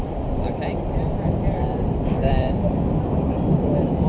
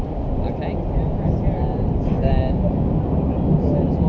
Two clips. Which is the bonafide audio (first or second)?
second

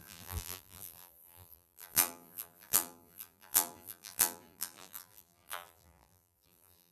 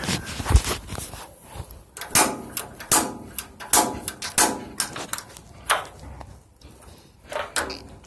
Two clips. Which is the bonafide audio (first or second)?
second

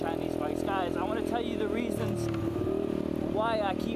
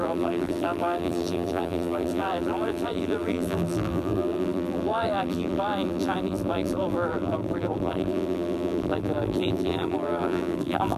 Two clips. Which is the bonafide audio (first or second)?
first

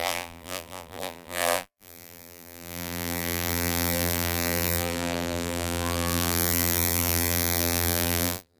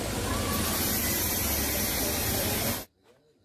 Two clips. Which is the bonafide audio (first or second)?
second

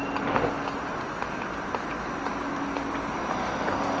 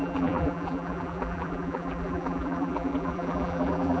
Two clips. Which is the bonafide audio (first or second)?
first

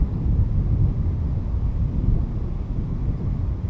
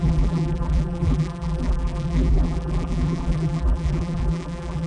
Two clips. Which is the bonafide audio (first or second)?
first